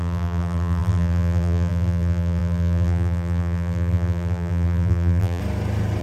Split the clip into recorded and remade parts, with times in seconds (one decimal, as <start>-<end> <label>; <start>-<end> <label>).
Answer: 0.0-5.4 remade; 5.4-6.0 recorded